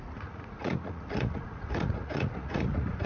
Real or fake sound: fake